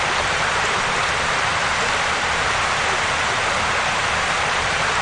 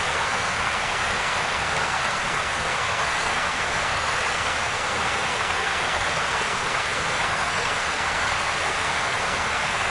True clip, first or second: first